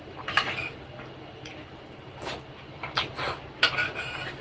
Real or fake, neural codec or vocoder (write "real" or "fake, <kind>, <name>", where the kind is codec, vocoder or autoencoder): real